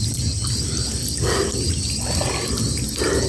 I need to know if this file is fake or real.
real